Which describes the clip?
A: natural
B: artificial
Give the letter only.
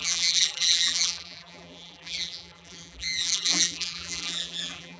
B